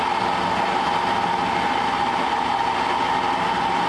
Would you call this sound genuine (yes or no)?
yes